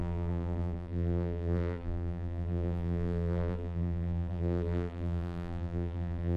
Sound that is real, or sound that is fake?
fake